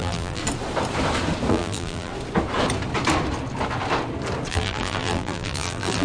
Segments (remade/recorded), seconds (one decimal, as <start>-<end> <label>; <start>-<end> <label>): 0.0-0.4 remade; 0.4-1.5 recorded; 1.5-2.1 remade; 2.1-4.5 recorded; 4.5-6.0 remade